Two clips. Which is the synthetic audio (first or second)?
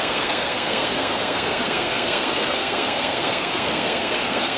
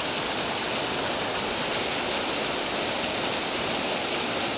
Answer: first